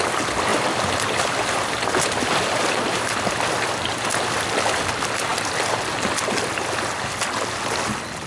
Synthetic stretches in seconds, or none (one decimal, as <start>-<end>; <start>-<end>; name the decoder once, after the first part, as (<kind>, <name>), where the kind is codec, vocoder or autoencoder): 0.5-4.8 (vocoder, BigVGAN v2)